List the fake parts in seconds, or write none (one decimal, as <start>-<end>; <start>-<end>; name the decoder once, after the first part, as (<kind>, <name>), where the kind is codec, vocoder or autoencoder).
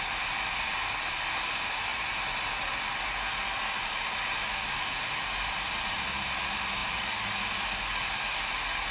none